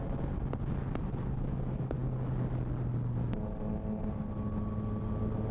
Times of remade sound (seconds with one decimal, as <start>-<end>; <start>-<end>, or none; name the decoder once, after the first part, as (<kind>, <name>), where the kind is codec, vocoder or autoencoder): none